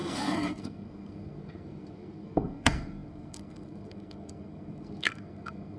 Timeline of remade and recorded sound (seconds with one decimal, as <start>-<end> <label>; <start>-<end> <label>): 0.0-5.8 remade